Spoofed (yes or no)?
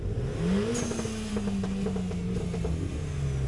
no